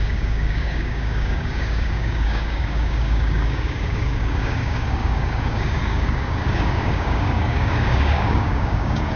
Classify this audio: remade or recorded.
remade